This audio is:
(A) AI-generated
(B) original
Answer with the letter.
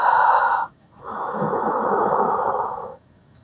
A